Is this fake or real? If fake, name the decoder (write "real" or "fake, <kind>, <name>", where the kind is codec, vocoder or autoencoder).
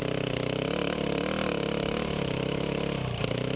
real